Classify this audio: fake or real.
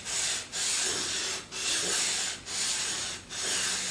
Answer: real